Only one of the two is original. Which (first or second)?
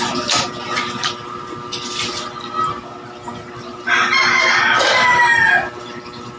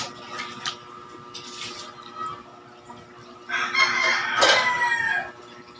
second